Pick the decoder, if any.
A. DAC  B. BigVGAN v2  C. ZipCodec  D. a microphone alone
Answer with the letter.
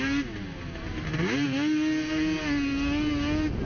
D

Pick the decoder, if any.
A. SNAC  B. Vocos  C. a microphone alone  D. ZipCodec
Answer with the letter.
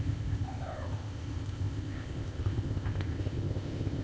D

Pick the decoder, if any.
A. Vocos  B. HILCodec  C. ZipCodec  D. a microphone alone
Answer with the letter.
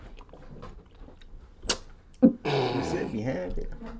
D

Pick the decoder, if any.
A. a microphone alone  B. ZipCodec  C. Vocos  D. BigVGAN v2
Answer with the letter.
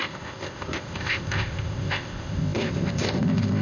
B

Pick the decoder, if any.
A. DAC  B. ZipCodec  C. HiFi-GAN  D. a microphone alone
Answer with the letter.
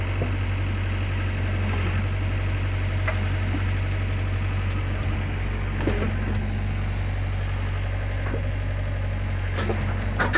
D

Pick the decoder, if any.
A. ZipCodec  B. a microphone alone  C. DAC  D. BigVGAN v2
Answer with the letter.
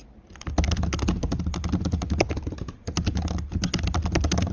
B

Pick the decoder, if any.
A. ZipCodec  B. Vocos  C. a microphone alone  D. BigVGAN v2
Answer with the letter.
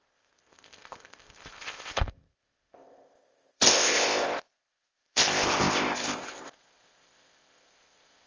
A